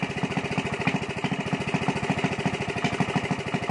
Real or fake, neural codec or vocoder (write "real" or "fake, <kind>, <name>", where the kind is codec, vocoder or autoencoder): real